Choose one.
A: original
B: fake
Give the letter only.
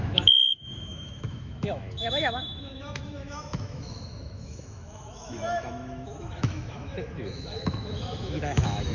B